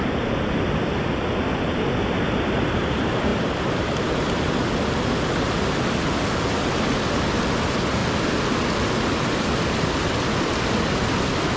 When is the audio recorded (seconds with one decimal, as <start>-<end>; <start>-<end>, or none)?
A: 0.0-11.6